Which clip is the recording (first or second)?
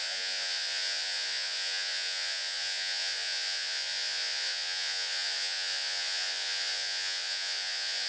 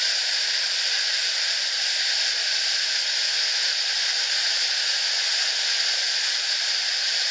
second